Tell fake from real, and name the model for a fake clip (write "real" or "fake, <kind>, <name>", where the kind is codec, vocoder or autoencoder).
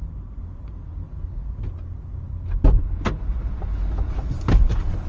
real